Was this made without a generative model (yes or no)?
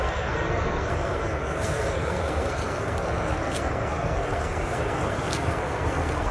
no